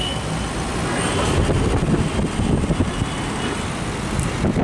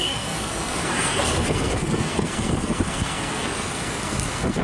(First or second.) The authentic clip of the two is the first